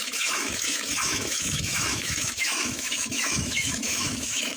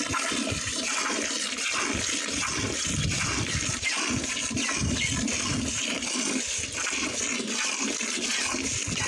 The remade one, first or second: first